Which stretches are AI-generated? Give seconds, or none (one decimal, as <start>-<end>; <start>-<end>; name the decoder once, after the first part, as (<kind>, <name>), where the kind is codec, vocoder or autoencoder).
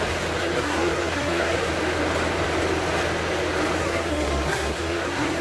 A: 0.4-1.7 (codec, SNAC); 3.8-5.4